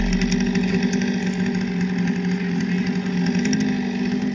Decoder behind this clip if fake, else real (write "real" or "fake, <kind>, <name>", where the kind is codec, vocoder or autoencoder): real